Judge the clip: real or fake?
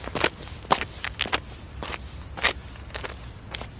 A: real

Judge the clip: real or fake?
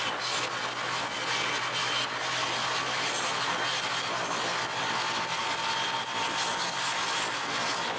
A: real